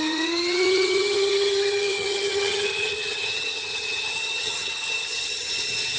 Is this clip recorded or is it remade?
remade